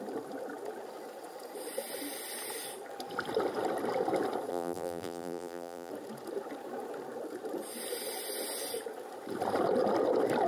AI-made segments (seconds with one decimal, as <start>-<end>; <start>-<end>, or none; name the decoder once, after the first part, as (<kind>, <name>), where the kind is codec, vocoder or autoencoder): 4.5-5.9 (vocoder, BigVGAN v2)